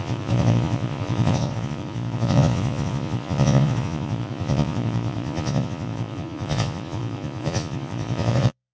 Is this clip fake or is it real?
fake